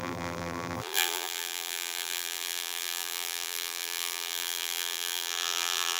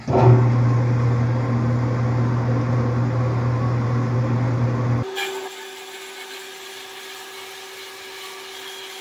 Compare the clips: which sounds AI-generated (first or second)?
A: first